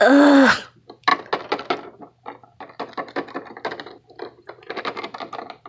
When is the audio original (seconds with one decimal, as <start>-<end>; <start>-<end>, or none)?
0.0-5.7